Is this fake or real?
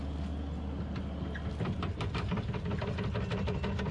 real